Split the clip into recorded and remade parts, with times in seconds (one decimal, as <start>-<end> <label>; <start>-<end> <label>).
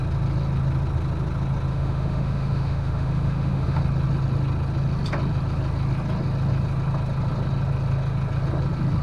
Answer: 0.0-1.7 recorded; 1.7-3.8 remade; 3.8-9.0 recorded